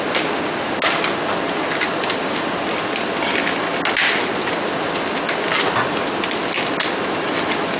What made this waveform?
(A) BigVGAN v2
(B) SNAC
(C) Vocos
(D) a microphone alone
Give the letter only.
D